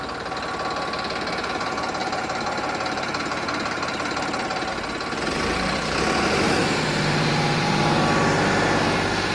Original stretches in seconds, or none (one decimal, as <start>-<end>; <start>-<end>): 0.0-2.0; 4.7-6.6; 7.8-9.3